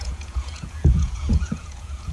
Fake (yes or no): yes